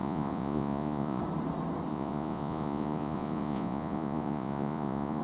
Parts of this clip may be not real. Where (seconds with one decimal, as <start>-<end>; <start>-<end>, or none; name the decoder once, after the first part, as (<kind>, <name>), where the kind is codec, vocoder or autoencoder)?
0.0-1.2 (vocoder, Vocos); 1.9-5.2